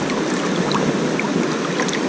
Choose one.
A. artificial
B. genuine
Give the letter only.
B